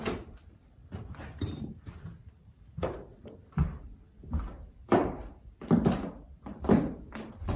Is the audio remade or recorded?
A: remade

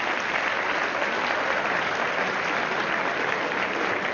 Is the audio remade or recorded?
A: recorded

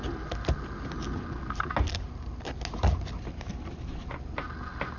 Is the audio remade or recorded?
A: recorded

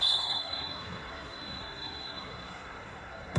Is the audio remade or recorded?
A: remade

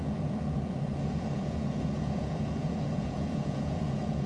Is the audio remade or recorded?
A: remade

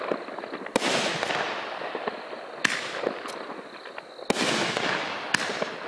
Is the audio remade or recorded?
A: recorded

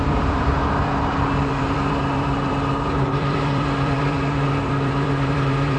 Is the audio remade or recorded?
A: remade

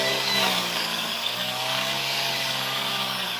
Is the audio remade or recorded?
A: remade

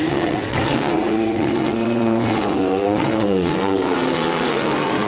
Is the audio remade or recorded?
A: remade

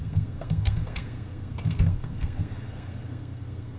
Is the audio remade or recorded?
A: remade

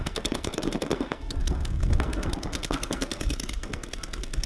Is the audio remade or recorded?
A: remade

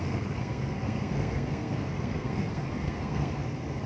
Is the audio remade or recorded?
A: remade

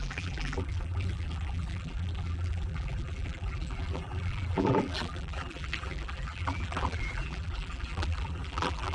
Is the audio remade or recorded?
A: remade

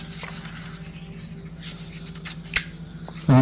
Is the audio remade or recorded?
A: recorded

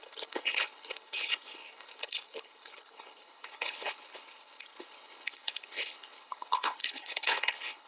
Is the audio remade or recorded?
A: remade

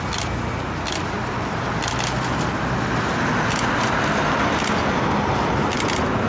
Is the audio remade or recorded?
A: recorded